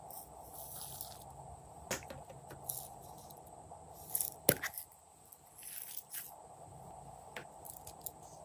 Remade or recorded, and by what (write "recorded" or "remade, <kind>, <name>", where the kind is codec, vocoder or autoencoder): recorded